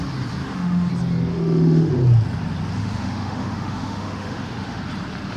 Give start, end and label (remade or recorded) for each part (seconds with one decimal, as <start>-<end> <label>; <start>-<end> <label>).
0.0-0.4 recorded; 0.4-0.9 remade; 0.9-1.3 recorded; 1.3-1.9 remade; 1.9-2.8 recorded; 2.8-4.8 remade; 4.8-5.4 recorded